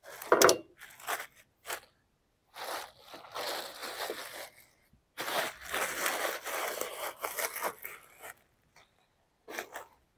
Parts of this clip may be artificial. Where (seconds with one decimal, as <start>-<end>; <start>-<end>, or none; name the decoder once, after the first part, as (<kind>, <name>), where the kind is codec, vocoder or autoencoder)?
none